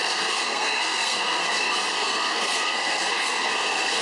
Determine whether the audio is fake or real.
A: fake